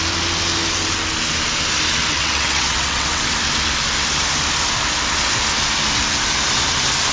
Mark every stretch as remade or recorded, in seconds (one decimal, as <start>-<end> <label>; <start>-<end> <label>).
0.0-2.0 recorded; 2.0-3.2 remade; 3.2-7.1 recorded